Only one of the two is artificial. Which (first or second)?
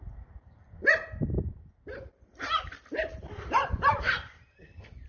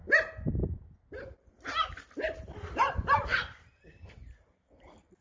first